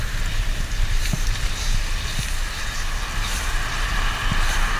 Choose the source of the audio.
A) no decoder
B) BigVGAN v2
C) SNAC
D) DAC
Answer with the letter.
A